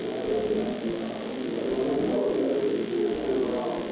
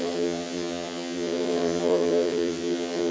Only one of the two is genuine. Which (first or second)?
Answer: first